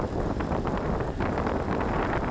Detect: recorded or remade recorded